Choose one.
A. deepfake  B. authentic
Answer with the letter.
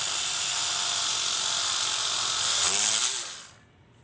B